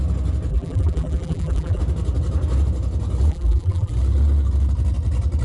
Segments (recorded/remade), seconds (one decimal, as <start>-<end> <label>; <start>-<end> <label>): 0.0-0.5 recorded; 0.5-1.8 remade; 1.8-3.3 recorded; 3.3-3.9 remade; 3.9-5.4 recorded